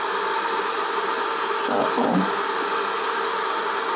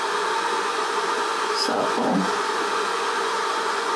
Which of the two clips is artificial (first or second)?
second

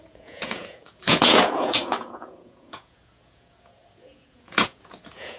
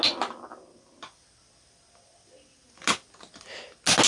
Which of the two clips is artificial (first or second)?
first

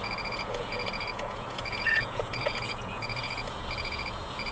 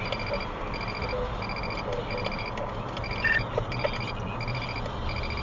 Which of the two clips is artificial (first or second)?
first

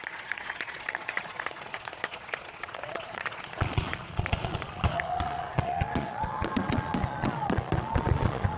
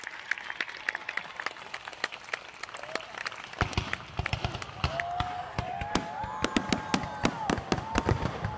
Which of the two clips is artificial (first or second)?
first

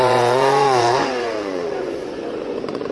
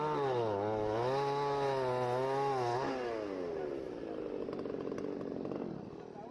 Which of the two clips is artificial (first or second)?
first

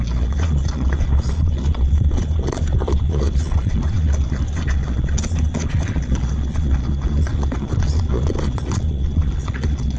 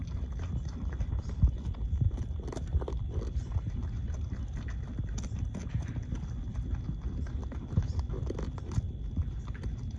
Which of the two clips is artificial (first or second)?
first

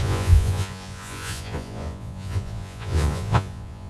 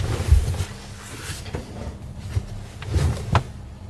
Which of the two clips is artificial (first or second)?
first